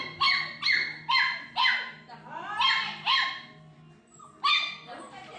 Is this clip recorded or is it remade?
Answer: recorded